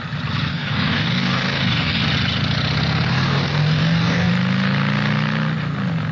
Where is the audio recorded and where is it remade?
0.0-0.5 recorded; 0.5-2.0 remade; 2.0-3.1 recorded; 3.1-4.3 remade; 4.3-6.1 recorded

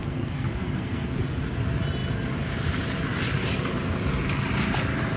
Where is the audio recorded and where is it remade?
0.0-1.2 remade; 1.2-5.2 recorded

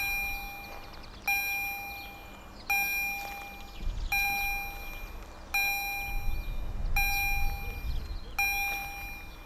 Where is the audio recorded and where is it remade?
0.0-9.5 recorded